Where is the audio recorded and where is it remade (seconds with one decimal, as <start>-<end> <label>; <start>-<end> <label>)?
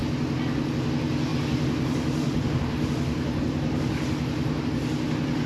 0.0-5.5 recorded